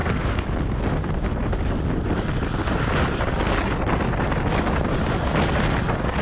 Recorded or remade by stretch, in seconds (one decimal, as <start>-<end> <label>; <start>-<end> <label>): 0.0-6.2 recorded